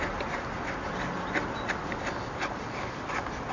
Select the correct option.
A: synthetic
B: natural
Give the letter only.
B